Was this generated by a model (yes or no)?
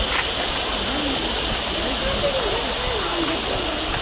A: no